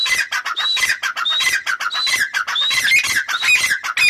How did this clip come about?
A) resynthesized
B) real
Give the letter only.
B